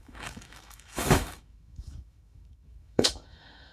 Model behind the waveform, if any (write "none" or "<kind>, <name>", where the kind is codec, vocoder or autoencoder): autoencoder, DAC-VAE